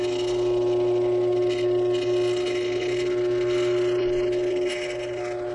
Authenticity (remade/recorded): recorded